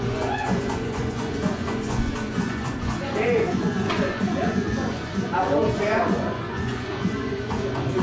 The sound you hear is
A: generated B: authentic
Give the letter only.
A